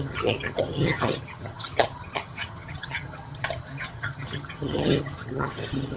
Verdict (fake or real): fake